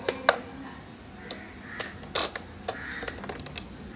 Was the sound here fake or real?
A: real